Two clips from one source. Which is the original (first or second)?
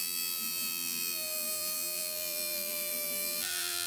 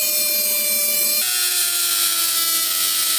second